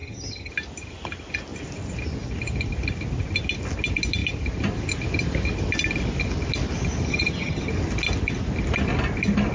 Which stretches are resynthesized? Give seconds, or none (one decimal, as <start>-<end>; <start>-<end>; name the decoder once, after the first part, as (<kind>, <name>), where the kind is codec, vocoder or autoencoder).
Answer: 0.0-0.5 (vocoder, HiFi-GAN); 7.1-7.7